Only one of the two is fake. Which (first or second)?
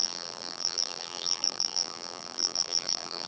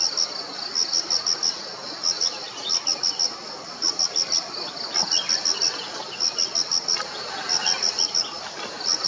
first